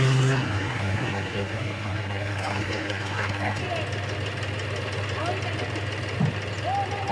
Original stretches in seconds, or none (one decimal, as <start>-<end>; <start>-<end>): 3.6-7.1